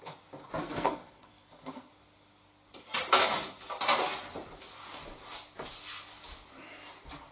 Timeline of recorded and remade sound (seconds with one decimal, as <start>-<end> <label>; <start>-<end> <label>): 0.0-0.6 recorded; 0.6-1.9 remade; 1.9-7.3 recorded